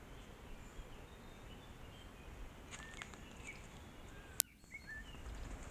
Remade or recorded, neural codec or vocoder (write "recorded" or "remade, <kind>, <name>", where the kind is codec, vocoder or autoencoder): recorded